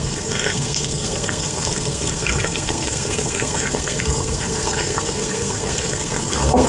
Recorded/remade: remade